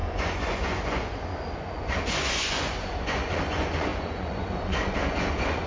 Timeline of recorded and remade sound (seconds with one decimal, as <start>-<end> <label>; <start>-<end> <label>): 0.0-5.7 remade